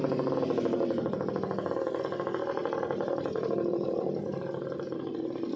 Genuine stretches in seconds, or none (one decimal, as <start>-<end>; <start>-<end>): 0.0-5.6